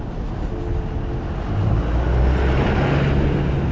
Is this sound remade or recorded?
recorded